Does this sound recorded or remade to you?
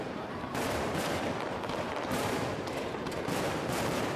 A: remade